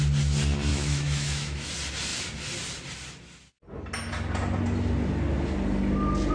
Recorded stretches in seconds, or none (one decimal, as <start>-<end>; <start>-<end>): 0.0-0.7; 1.7-6.3